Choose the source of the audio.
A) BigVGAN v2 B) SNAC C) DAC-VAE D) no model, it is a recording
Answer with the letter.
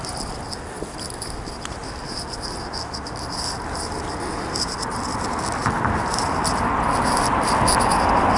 D